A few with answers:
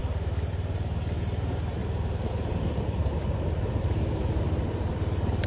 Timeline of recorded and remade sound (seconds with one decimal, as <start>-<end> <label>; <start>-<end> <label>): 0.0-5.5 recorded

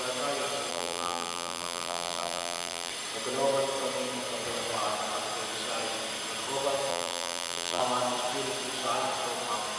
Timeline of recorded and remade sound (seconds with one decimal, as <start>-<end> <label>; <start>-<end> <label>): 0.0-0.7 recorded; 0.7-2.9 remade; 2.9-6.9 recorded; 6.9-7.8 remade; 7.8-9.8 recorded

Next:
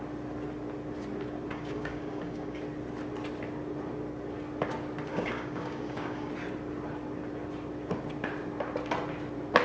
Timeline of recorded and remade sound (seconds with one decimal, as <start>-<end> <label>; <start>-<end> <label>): 0.0-1.5 recorded; 1.5-2.6 remade; 2.6-5.1 recorded; 5.1-6.3 remade; 6.3-9.6 recorded

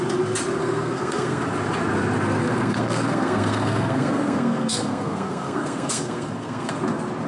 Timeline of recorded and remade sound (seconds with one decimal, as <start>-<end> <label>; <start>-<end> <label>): 0.0-0.6 recorded; 0.6-1.4 remade; 1.4-2.4 recorded; 2.4-6.8 remade; 6.8-7.3 recorded

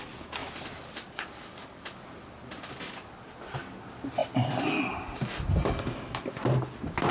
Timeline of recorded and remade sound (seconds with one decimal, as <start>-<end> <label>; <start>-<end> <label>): 0.0-0.4 recorded; 0.4-3.4 remade; 3.4-7.1 recorded

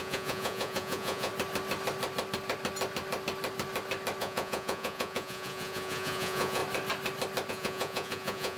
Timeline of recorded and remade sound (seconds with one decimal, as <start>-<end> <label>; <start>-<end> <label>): 0.0-1.3 remade; 1.3-4.2 recorded; 4.2-6.6 remade; 6.6-7.5 recorded; 7.5-8.6 remade